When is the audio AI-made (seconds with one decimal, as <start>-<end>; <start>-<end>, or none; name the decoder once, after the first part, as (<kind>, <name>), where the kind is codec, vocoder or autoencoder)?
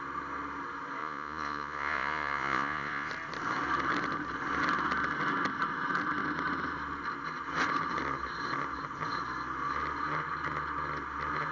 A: 1.0-3.1 (vocoder, Vocos)